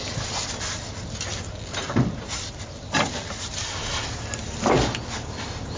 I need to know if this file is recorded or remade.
recorded